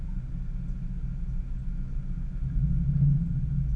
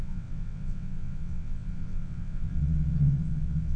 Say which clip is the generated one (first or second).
second